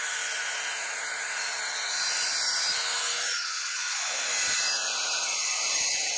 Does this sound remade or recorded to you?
recorded